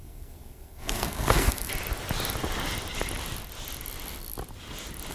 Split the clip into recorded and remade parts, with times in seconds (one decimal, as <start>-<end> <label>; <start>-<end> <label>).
0.0-1.7 remade; 1.7-5.1 recorded